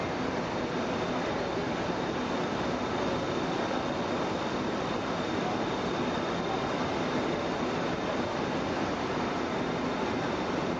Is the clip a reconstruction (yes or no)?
no